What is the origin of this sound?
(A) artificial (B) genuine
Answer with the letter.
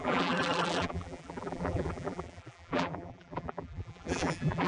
A